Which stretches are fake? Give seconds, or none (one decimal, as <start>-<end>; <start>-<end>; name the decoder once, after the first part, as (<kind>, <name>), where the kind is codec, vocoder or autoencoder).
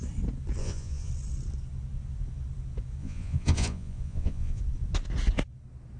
0.6-1.1 (vocoder, Vocos); 3.0-4.6